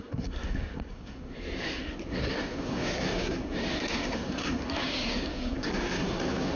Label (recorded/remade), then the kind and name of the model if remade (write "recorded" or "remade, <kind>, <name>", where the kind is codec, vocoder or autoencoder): remade, codec, SNAC